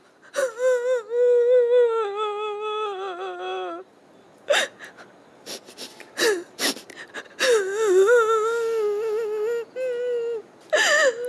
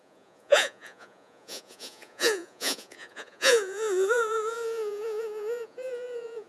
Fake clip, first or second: second